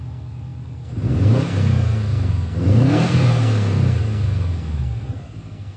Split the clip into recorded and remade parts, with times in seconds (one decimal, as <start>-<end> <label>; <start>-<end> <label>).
0.0-5.8 remade